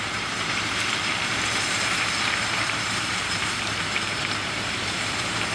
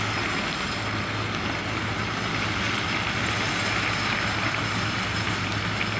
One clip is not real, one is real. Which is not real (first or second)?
first